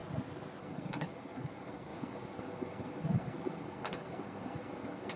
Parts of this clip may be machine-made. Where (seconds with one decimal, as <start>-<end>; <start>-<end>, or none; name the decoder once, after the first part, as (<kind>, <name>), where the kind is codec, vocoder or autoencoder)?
0.6-5.2 (codec, SNAC)

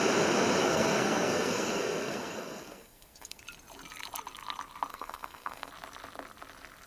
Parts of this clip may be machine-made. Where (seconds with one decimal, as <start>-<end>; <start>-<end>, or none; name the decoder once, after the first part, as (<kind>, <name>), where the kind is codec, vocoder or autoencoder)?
0.6-3.4 (codec, SNAC); 4.9-5.7

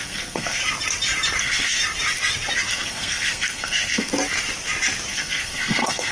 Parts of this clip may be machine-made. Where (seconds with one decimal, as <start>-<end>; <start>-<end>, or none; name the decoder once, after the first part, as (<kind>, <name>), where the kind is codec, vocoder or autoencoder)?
0.0-0.6 (codec, SNAC); 1.4-1.8; 2.7-4.1; 5.1-6.1